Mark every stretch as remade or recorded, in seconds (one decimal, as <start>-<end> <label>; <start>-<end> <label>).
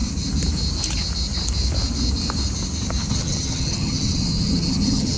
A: 0.0-3.1 recorded; 3.1-5.2 remade